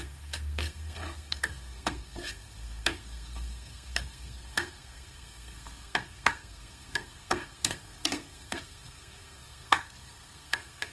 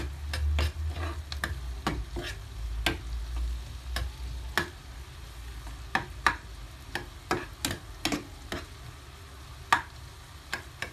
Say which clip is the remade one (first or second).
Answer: first